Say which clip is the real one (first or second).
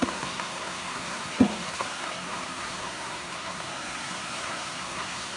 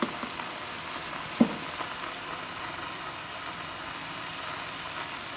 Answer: second